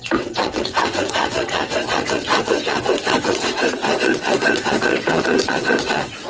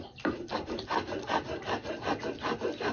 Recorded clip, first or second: second